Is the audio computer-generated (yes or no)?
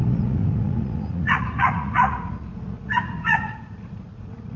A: yes